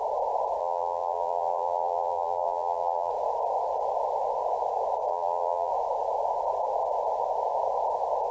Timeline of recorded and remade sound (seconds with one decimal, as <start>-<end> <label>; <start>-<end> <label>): 0.0-0.6 recorded; 0.6-3.1 remade; 3.1-5.1 recorded; 5.1-5.7 remade; 5.7-8.3 recorded